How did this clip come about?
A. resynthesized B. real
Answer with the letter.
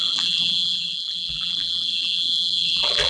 A